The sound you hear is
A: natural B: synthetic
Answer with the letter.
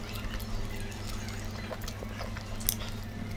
A